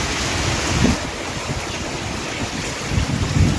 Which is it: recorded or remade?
recorded